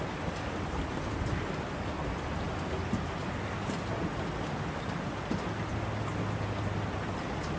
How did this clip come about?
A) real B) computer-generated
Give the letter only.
A